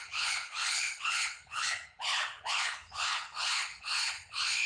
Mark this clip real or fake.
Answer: fake